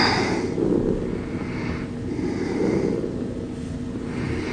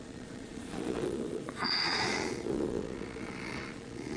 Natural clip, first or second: first